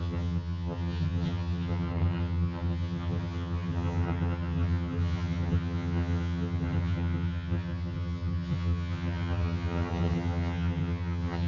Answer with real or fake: fake